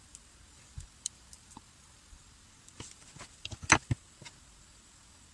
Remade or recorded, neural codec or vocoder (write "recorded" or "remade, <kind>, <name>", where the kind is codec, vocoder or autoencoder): remade, vocoder, BigVGAN v2